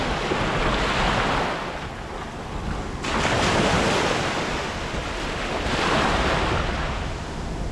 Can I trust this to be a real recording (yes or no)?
yes